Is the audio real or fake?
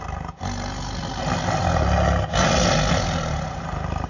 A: real